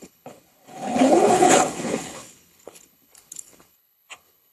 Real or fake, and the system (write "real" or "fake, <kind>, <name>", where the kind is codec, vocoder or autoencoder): fake, codec, HILCodec